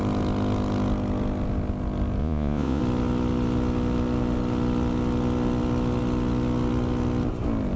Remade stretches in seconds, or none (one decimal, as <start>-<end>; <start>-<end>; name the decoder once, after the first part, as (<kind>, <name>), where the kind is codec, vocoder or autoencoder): 2.2-2.8 (vocoder, Vocos)